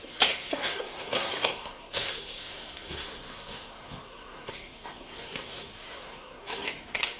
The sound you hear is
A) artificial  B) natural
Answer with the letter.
A